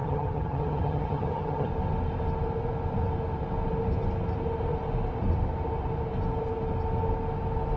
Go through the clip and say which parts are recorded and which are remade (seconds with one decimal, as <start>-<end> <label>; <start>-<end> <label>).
0.0-1.7 remade; 1.7-7.8 recorded